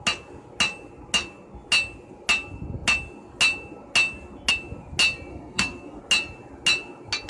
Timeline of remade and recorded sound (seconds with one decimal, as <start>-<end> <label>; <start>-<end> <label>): 0.0-5.3 recorded; 5.3-6.0 remade; 6.0-7.3 recorded